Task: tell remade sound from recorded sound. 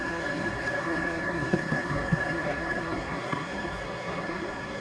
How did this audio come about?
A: remade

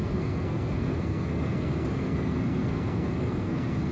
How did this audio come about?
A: remade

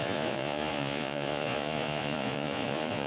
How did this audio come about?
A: remade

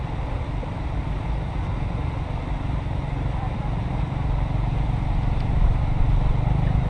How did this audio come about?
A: remade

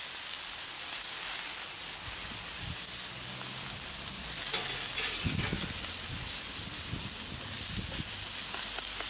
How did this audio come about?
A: recorded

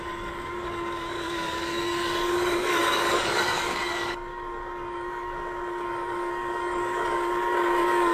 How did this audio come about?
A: remade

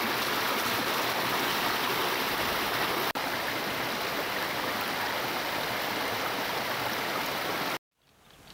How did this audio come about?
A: recorded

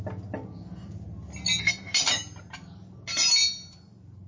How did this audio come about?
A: recorded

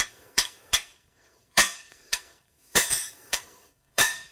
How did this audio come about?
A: remade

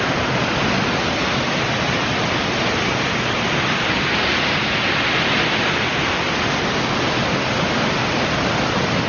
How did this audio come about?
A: recorded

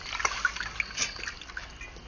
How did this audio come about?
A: recorded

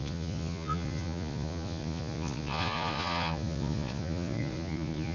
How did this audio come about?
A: remade